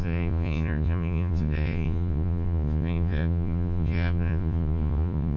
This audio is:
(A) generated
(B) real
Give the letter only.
A